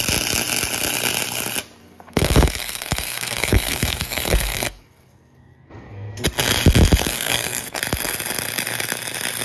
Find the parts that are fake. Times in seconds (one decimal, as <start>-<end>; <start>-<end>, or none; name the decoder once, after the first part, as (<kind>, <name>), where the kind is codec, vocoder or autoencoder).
1.8-6.1 (codec, SNAC); 7.0-7.8

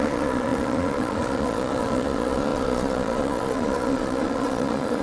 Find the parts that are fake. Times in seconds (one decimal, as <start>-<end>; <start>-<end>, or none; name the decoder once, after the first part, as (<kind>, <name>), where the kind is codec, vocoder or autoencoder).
0.0-5.0 (vocoder, Vocos)

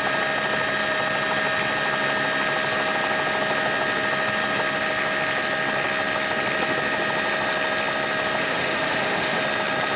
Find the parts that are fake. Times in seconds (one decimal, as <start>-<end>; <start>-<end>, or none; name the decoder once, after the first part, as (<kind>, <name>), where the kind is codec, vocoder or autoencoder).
8.4-9.4 (autoencoder, DAC-VAE)

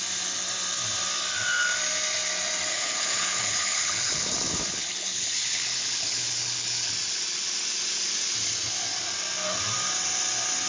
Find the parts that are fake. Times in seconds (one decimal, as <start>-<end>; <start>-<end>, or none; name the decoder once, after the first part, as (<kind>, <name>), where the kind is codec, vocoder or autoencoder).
2.7-6.9 (codec, HILCodec)

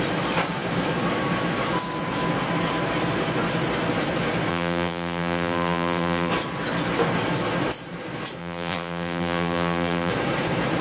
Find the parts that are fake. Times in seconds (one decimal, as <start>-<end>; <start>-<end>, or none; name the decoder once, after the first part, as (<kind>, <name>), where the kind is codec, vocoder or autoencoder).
4.5-6.3 (vocoder, BigVGAN v2); 8.4-10.1

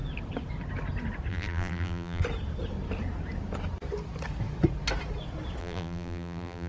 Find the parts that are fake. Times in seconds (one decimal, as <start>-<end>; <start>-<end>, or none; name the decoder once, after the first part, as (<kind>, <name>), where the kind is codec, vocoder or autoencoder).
1.3-2.2 (vocoder, BigVGAN v2); 5.6-6.7

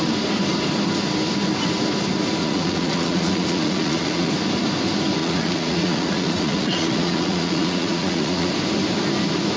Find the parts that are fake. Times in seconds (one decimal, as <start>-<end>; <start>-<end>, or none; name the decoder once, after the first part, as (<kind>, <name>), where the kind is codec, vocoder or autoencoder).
2.4-4.3 (vocoder, Vocos); 5.2-8.5